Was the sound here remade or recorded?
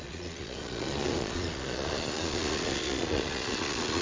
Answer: remade